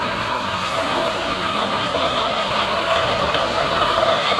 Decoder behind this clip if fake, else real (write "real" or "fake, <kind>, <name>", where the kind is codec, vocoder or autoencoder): fake, codec, SNAC